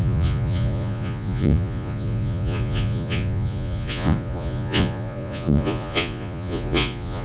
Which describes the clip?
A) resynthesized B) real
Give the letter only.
A